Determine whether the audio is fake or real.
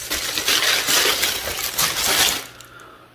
real